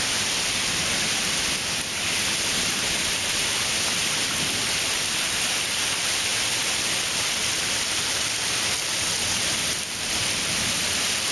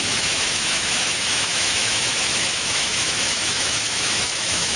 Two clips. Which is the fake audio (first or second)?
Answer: second